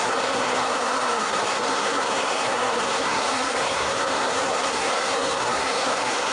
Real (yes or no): no